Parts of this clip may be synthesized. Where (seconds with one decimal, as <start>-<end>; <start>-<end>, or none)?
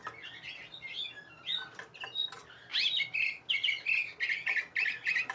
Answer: none